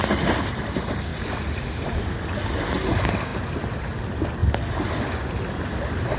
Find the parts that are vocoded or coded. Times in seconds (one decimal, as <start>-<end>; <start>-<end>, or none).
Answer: 1.1-2.0